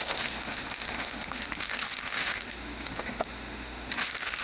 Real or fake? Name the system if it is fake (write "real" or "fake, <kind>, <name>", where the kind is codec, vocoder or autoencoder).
fake, autoencoder, DAC-VAE